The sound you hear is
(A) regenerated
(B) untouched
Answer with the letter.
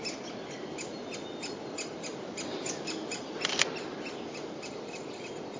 B